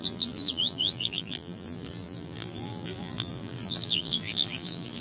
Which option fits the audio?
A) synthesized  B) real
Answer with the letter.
A